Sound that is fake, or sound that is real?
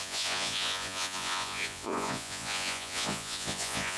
fake